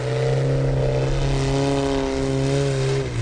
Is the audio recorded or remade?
recorded